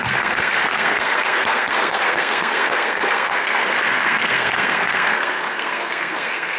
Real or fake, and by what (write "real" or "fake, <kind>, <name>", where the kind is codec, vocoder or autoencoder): fake, codec, SNAC